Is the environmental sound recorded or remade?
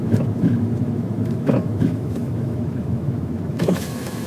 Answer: remade